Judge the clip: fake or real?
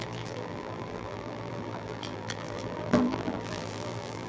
fake